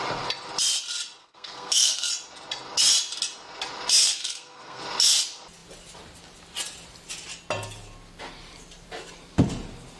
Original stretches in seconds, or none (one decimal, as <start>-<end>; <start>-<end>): 0.0-1.2; 2.1-4.0; 4.8-10.0